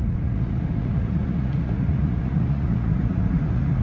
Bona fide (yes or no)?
no